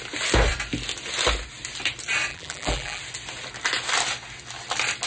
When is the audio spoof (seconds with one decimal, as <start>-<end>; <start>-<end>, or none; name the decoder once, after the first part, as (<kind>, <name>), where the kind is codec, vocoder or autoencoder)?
2.3-3.0 (vocoder, BigVGAN v2)